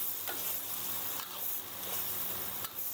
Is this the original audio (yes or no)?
yes